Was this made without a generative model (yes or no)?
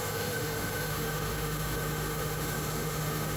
no